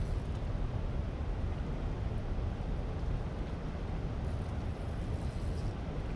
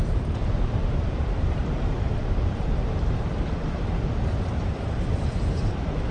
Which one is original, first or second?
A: first